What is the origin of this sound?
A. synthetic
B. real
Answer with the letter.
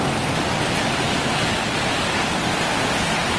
B